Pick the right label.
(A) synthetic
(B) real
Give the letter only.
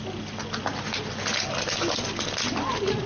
B